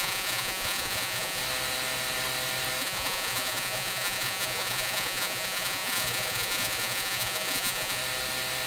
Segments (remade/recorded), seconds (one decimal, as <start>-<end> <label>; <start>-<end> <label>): 0.0-1.4 remade; 1.4-2.8 recorded; 2.8-8.0 remade; 8.0-8.7 recorded